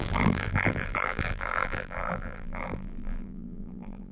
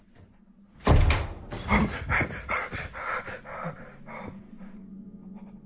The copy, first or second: first